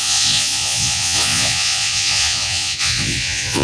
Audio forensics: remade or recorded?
remade